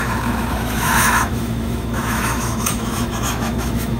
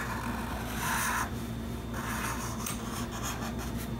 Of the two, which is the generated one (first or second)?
first